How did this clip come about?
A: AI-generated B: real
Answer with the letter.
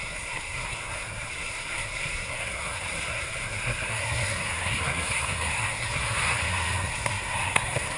A